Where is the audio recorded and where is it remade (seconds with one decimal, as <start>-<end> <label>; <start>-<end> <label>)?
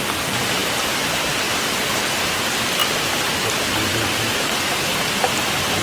0.0-0.6 recorded; 0.6-1.3 remade; 1.3-5.8 recorded